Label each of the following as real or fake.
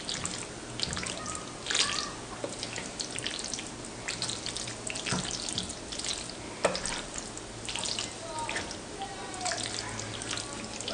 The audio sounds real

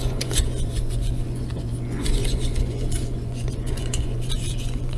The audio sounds fake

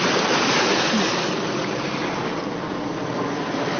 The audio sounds real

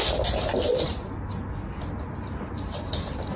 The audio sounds real